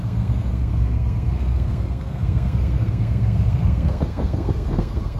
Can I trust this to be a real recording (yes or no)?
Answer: no